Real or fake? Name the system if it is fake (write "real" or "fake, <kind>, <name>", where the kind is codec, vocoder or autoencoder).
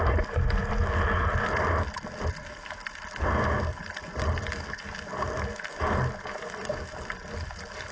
real